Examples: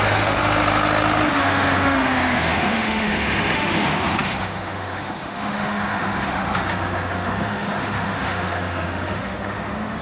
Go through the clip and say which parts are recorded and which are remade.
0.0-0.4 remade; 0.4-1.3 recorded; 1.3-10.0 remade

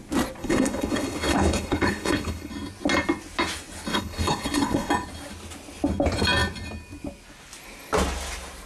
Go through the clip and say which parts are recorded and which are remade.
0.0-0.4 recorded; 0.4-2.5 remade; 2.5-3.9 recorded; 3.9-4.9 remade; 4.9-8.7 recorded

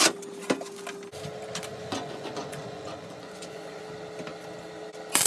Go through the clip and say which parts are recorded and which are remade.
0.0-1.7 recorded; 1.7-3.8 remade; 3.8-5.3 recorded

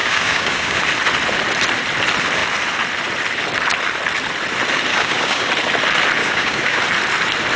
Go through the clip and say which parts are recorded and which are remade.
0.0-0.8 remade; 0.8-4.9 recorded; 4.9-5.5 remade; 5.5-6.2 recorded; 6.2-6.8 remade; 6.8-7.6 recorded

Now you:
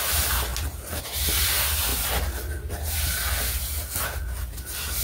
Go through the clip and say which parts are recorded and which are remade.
0.0-5.0 recorded